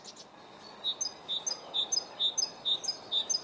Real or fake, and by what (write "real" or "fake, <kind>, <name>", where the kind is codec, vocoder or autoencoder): real